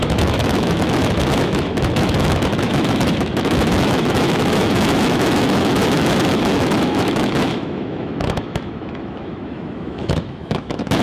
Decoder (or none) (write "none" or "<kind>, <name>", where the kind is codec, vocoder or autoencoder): autoencoder, DAC-VAE